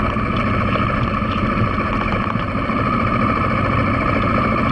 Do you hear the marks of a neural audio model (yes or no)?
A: no